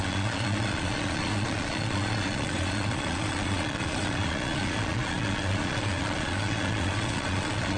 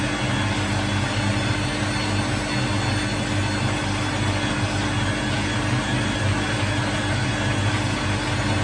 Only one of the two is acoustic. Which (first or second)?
second